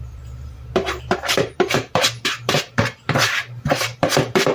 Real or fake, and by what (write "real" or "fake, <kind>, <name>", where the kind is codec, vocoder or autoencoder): fake, vocoder, BigVGAN v2